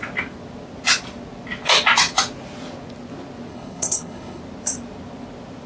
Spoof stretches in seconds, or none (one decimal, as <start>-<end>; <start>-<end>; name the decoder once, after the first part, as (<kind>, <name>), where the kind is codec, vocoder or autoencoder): 3.5-4.4 (codec, HILCodec)